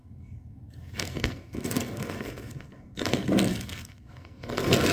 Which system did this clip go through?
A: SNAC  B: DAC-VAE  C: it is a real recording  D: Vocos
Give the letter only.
A